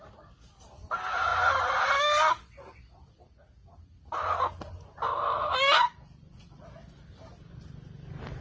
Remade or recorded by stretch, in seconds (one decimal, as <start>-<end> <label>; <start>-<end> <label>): 0.0-8.4 recorded